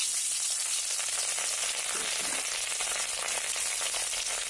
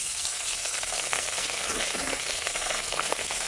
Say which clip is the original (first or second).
first